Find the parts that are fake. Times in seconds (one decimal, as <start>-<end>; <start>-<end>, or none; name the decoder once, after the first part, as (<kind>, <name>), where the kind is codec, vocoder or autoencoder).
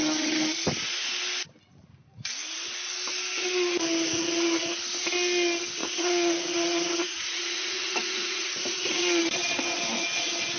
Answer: 5.8-9.2 (vocoder, Vocos)